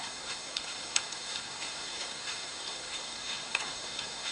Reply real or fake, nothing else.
fake